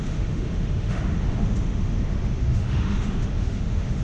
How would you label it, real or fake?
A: fake